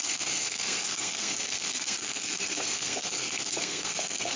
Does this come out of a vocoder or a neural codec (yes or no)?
yes